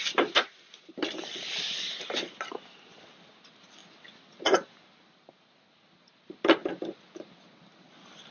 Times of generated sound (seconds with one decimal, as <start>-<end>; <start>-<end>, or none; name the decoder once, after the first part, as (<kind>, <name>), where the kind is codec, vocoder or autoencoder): none